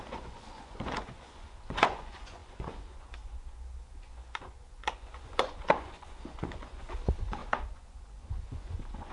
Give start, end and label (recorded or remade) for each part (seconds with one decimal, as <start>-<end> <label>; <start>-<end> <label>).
0.0-9.1 remade

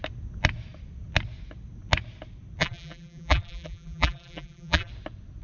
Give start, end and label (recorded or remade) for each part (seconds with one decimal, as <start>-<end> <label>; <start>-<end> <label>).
0.0-2.6 recorded; 2.6-4.9 remade; 4.9-5.4 recorded

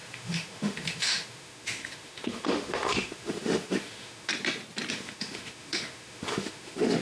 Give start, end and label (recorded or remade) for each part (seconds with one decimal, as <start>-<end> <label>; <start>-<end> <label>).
0.0-4.3 remade; 4.3-4.9 recorded; 4.9-7.0 remade

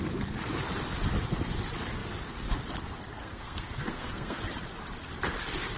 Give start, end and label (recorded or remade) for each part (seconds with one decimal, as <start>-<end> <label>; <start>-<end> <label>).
0.0-3.2 recorded; 3.2-4.4 remade; 4.4-5.8 recorded

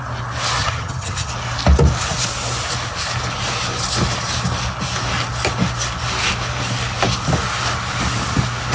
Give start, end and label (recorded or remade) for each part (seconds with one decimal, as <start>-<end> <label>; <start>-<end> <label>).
0.0-0.6 recorded; 0.6-1.3 remade; 1.3-8.7 recorded

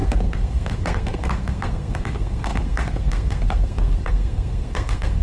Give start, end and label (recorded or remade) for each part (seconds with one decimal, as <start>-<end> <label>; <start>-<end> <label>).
0.0-5.2 remade

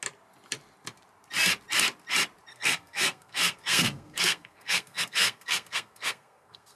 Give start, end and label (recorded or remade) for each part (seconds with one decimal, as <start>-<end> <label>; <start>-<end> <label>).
0.0-2.5 recorded; 2.5-6.8 remade